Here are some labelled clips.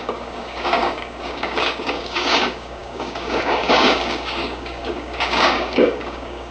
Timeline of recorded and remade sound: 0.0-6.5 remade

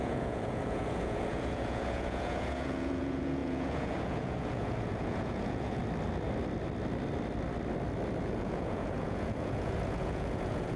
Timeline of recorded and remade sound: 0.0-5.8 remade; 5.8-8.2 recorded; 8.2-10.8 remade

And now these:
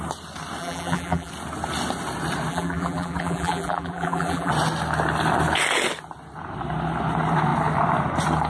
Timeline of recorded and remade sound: 0.0-0.6 recorded; 0.6-1.3 remade; 1.3-2.5 recorded; 2.5-4.5 remade; 4.5-8.5 recorded

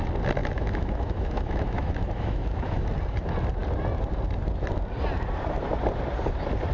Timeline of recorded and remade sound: 0.0-0.4 recorded; 0.4-2.9 remade; 2.9-6.7 recorded

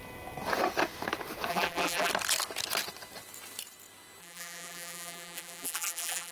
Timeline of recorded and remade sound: 0.0-1.5 recorded; 1.5-2.1 remade; 2.1-4.2 recorded; 4.2-6.3 remade

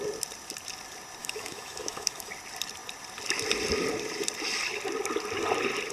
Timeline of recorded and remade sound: 0.0-1.2 recorded; 1.2-2.3 remade; 2.3-5.9 recorded